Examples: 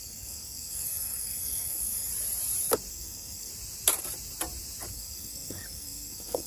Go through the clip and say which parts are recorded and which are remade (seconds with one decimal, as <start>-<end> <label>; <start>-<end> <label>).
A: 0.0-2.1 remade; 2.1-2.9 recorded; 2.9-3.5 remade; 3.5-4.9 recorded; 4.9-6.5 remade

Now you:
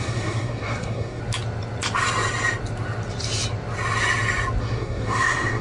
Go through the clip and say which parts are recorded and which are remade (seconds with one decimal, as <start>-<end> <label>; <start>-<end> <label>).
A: 0.0-1.2 remade; 1.2-4.6 recorded; 4.6-5.6 remade

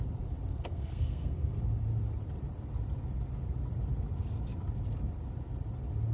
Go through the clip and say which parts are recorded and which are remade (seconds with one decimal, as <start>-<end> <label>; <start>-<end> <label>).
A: 0.0-0.5 recorded; 0.5-1.6 remade; 1.6-6.1 recorded